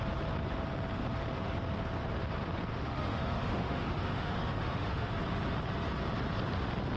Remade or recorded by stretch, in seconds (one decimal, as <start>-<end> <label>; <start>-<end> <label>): 0.0-2.7 recorded; 2.7-5.1 remade; 5.1-7.0 recorded